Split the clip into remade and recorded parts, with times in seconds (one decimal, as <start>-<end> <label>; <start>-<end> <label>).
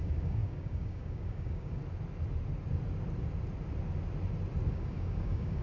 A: 0.0-1.8 remade; 1.8-4.7 recorded; 4.7-5.6 remade